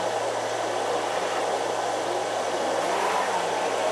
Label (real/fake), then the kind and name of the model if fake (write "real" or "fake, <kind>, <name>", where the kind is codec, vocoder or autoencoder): real